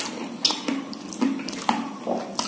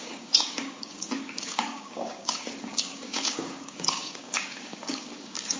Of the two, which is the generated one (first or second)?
second